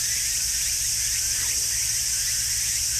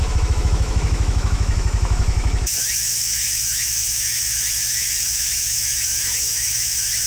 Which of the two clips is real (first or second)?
first